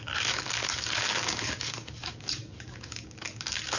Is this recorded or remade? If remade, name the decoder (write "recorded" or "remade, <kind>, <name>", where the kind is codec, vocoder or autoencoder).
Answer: remade, codec, DAC